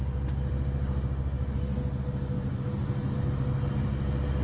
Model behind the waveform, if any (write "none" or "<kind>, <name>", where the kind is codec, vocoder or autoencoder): none